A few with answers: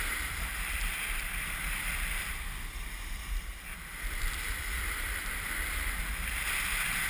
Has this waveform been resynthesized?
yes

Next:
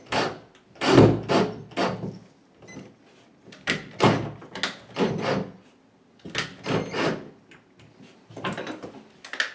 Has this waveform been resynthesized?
no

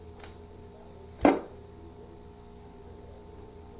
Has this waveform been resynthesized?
no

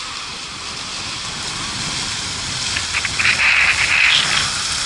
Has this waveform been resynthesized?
no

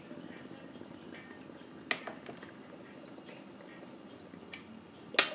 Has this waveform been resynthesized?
no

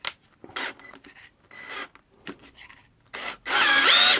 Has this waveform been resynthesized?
no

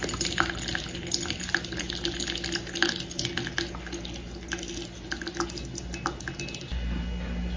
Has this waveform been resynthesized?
no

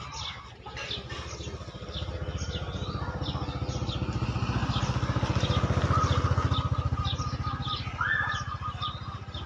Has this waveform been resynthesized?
no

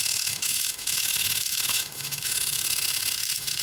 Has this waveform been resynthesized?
yes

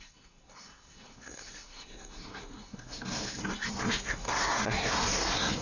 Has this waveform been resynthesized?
yes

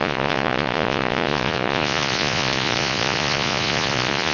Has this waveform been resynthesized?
yes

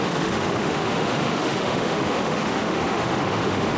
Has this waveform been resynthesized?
yes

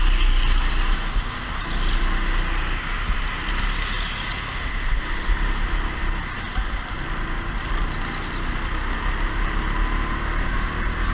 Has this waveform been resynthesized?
no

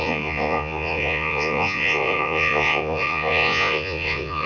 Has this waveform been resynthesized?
yes